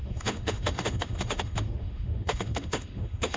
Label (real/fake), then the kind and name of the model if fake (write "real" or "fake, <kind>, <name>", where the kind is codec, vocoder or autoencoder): fake, autoencoder, DAC-VAE